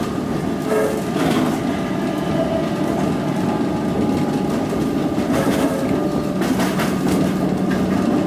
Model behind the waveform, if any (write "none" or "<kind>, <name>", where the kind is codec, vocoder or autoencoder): none